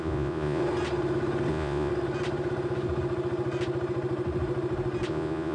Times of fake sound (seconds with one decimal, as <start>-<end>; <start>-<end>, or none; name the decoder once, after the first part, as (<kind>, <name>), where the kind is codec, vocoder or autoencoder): 0.0-0.6 (vocoder, Vocos); 1.5-1.9; 5.1-5.5

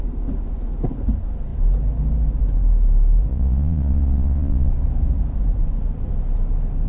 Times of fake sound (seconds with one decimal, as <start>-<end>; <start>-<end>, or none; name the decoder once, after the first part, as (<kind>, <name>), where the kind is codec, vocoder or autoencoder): 3.3-4.7 (vocoder, Vocos)

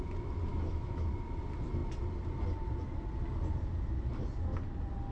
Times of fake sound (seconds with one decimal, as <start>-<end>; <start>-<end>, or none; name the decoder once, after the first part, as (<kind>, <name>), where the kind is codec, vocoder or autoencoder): 0.5-1.1 (autoencoder, DAC-VAE)

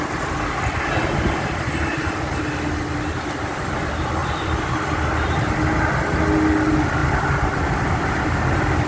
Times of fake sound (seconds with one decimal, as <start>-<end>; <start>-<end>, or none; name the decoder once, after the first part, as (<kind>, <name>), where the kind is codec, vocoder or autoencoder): 4.2-4.7 (vocoder, BigVGAN v2); 7.0-8.1

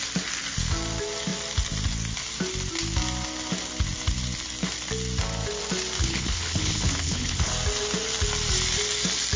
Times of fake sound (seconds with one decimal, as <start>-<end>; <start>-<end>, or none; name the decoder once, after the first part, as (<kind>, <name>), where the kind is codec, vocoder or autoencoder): 6.0-7.5 (codec, HILCodec)